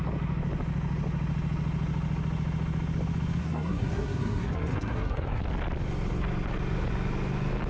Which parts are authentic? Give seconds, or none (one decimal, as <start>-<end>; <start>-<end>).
0.0-3.4; 5.4-7.7